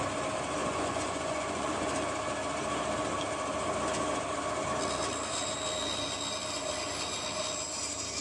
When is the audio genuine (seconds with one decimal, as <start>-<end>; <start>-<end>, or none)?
0.0-0.6; 1.9-8.2